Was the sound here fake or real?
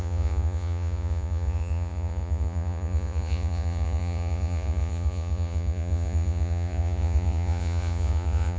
fake